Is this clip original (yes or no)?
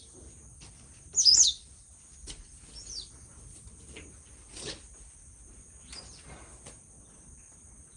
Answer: yes